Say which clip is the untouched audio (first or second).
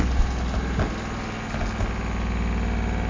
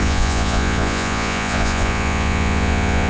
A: first